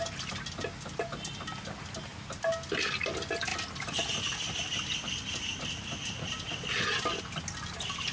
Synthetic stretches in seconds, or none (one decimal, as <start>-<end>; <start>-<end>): none